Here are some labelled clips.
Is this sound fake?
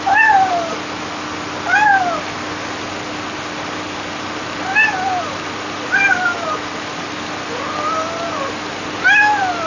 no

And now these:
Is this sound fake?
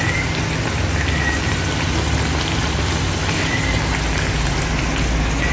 no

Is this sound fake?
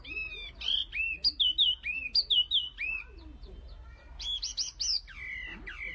no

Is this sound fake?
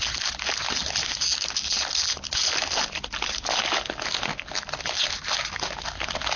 no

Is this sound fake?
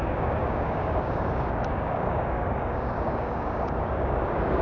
yes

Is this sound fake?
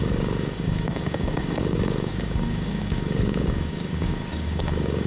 yes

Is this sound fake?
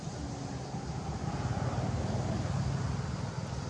no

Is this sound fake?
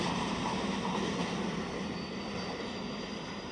no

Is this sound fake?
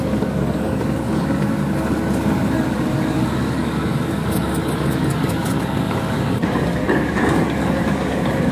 yes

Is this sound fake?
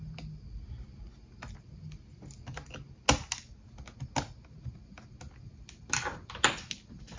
no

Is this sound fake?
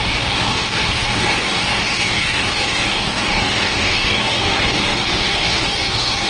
yes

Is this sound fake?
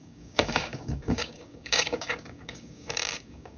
yes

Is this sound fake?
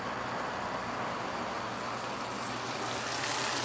no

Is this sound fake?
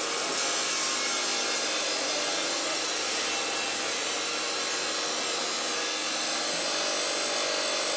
no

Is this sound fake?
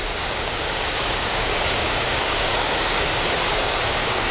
yes